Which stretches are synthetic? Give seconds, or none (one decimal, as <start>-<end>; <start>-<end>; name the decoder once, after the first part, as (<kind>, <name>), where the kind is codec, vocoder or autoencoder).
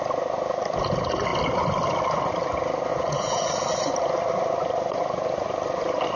2.9-3.4 (vocoder, Vocos)